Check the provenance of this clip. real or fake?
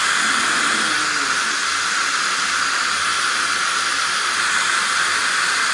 real